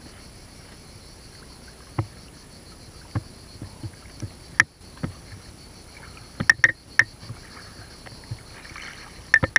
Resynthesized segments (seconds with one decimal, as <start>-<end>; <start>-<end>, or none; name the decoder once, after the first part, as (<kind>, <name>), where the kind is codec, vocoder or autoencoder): none